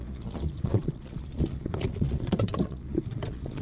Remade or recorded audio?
remade